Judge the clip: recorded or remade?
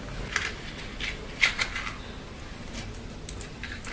recorded